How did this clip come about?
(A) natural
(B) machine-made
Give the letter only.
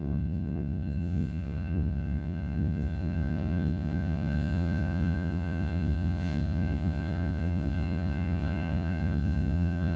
B